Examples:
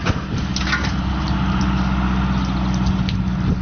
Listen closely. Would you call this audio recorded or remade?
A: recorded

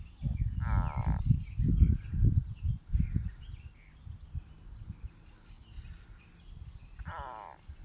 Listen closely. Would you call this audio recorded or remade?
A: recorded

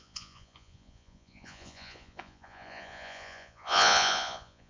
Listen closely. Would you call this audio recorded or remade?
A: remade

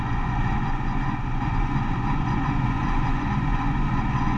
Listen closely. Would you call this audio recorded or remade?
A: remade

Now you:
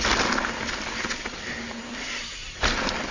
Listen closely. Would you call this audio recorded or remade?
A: recorded